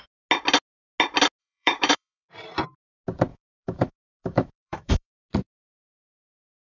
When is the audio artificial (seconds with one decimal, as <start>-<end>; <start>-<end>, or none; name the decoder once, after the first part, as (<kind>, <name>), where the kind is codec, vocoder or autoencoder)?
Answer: 1.4-2.3 (autoencoder, DAC-VAE); 3.3-5.1